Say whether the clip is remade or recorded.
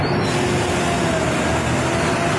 recorded